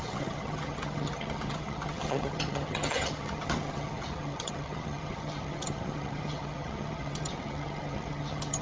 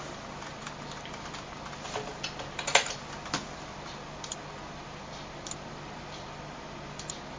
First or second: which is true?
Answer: second